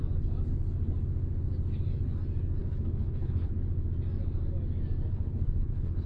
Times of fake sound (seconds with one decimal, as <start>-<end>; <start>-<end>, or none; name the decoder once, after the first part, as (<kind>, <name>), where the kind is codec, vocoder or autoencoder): 2.6-3.5 (codec, HILCodec); 5.1-6.1